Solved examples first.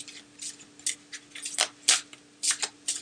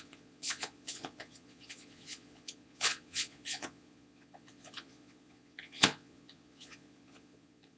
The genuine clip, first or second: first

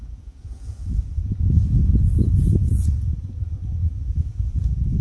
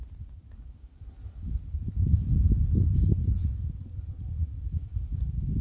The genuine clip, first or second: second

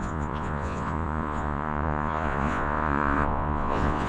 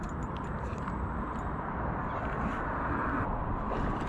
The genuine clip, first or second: second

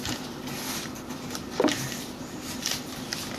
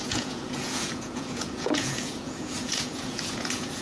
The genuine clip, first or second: first